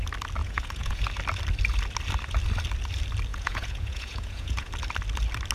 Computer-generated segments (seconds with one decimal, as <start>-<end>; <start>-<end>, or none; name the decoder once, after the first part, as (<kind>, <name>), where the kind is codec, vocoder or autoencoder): 0.4-1.0 (vocoder, Vocos); 3.3-4.7